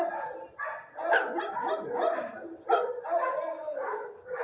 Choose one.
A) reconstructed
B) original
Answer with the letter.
B